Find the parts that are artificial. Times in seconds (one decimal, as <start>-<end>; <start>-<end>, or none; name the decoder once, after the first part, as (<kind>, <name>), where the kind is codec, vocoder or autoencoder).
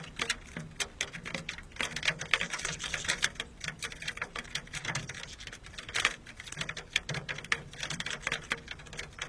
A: none